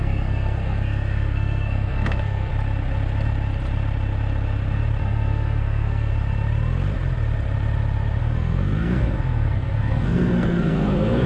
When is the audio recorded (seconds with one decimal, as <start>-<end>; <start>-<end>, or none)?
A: 2.5-5.0; 6.1-8.2